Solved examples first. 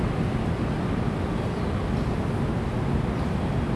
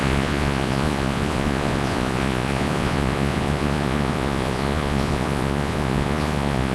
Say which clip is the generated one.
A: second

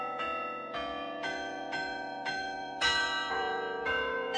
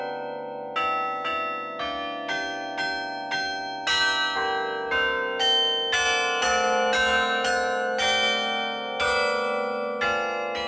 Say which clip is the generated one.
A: first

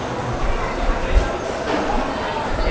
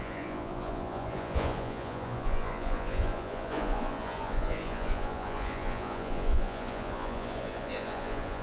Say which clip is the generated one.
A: second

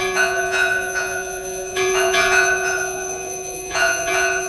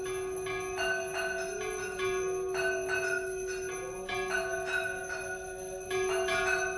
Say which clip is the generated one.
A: first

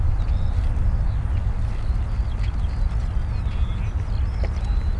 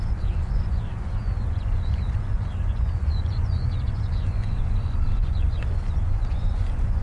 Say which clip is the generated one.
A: second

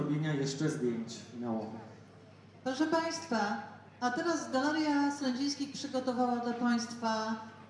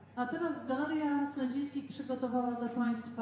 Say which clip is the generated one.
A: second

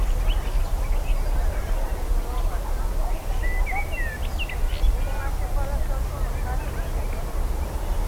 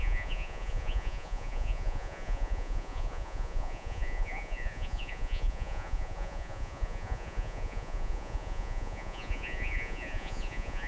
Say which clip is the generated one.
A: second